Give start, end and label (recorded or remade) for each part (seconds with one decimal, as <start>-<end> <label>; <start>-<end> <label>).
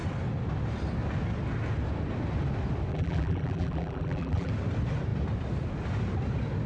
0.0-2.9 recorded; 2.9-4.5 remade; 4.5-6.7 recorded